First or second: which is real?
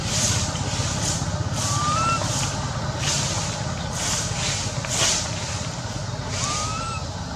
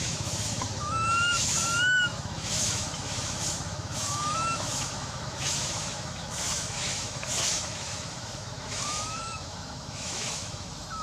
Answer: first